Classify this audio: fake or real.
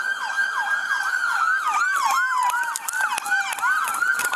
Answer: real